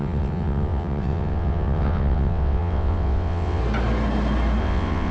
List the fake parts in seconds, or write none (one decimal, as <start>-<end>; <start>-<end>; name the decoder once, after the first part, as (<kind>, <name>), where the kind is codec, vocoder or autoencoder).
0.0-3.6 (vocoder, WaveNeXt); 4.6-5.1